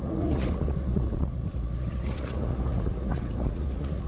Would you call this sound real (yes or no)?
no